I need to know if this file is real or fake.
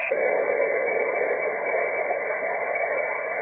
fake